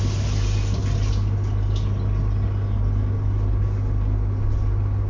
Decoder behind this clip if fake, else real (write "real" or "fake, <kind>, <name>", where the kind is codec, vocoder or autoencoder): real